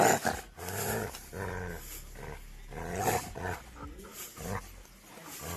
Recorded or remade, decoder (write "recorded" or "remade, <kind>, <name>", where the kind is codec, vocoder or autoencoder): recorded